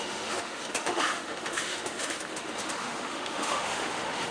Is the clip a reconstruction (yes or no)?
yes